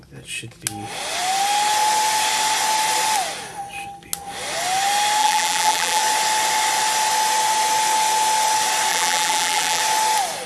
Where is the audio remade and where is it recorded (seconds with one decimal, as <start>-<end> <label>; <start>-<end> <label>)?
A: 0.0-5.2 recorded; 5.2-6.0 remade; 6.0-8.9 recorded; 8.9-9.8 remade; 9.8-10.5 recorded

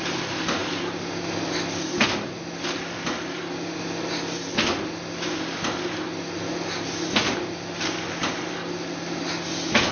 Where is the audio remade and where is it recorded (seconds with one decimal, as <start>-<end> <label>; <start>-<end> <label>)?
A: 0.0-9.9 recorded

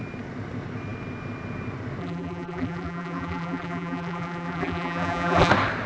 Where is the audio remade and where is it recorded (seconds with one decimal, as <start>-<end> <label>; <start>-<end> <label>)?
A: 0.0-2.0 recorded; 2.0-5.5 remade; 5.5-5.9 recorded

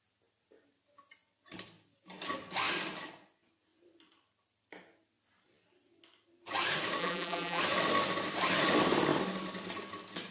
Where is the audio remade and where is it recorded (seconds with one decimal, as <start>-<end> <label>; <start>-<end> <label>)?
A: 0.0-7.0 recorded; 7.0-7.6 remade; 7.6-10.3 recorded

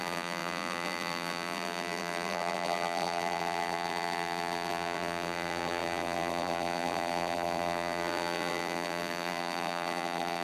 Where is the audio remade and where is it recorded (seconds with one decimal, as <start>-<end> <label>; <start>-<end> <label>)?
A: 0.0-10.4 remade

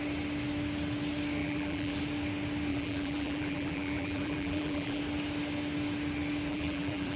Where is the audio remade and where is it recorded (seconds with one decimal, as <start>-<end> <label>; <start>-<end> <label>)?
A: 0.0-1.4 recorded; 1.4-2.0 remade; 2.0-2.7 recorded; 2.7-5.0 remade; 5.0-6.5 recorded; 6.5-7.2 remade

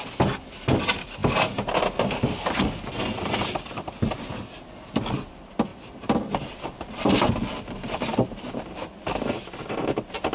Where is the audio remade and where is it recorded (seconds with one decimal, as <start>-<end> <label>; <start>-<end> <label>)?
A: 0.0-5.7 recorded; 5.7-8.9 remade; 8.9-10.3 recorded